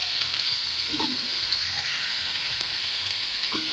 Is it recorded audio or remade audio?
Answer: remade